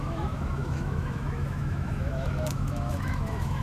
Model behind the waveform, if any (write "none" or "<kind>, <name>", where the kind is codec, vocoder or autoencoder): autoencoder, DAC-VAE